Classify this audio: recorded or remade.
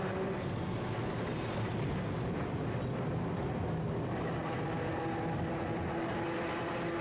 recorded